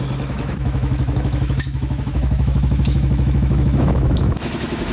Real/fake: fake